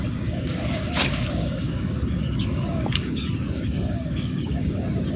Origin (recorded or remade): remade